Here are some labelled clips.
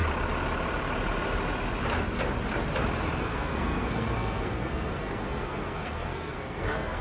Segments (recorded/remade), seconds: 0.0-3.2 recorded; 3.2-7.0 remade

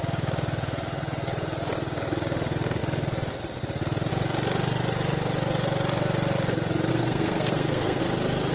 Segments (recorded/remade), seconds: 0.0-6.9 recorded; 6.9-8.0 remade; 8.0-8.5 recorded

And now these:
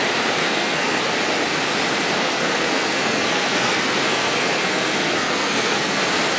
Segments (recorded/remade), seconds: 0.0-0.4 recorded; 0.4-1.0 remade; 1.0-2.2 recorded; 2.2-6.0 remade; 6.0-6.4 recorded

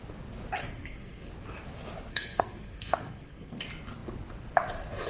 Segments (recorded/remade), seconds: 0.0-0.6 recorded; 0.6-1.3 remade; 1.3-2.1 recorded; 2.1-3.6 remade; 3.6-5.1 recorded

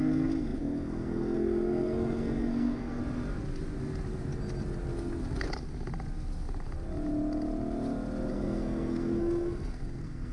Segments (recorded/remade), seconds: 0.0-3.0 remade; 3.0-8.3 recorded; 8.3-10.3 remade

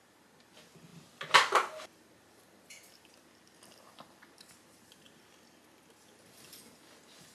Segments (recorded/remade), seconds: 0.0-7.3 recorded

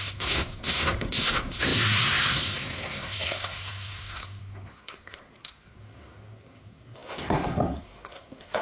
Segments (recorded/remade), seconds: 0.0-8.6 remade